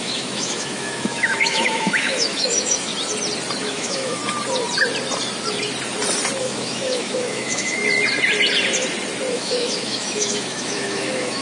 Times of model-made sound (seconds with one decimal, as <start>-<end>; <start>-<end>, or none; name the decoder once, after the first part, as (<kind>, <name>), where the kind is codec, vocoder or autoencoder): 0.0-2.9 (autoencoder, DAC-VAE); 3.6-4.2; 6.4-7.8; 9.3-11.4